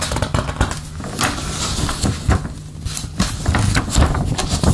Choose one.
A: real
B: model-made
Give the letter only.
A